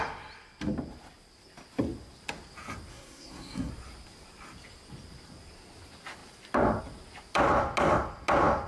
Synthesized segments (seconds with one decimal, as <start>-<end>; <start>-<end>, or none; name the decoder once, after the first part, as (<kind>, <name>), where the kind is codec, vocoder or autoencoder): 2.9-3.7 (codec, SNAC)